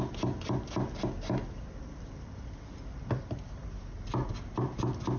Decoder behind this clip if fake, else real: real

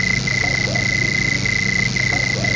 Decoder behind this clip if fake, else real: real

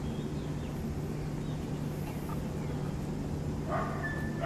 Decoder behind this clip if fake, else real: real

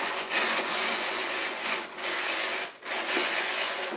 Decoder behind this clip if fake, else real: fake, vocoder, Vocos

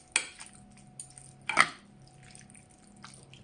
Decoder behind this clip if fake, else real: real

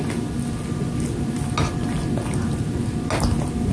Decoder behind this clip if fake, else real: real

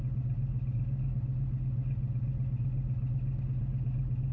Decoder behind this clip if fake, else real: real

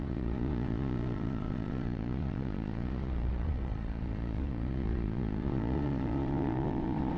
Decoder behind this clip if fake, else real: fake, vocoder, Vocos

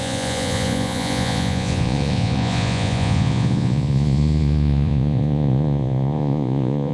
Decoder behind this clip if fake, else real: fake, vocoder, Vocos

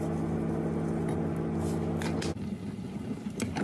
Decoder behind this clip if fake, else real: real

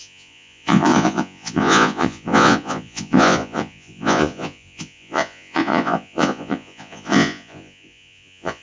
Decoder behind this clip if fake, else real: fake, vocoder, Vocos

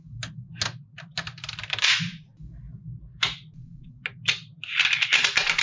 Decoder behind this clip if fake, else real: real